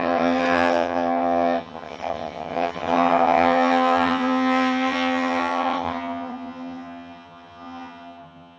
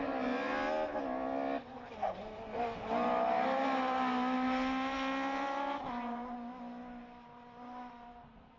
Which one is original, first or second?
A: second